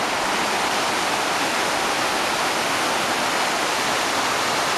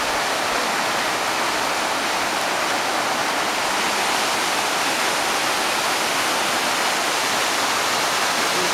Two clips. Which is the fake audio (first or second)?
first